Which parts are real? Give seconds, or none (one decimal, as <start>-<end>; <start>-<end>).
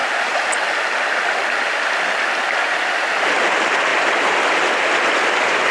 0.0-5.7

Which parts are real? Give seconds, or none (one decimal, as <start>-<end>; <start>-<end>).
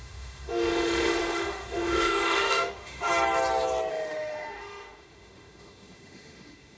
3.1-3.9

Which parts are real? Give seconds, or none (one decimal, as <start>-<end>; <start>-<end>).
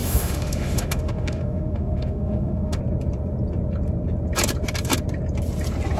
2.8-6.0